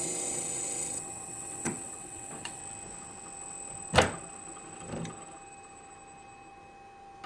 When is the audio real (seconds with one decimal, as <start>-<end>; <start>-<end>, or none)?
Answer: 2.6-7.3